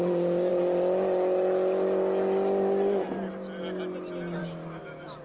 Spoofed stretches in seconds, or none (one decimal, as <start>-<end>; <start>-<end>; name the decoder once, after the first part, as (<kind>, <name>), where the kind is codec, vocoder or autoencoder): 4.4-5.2 (autoencoder, DAC-VAE)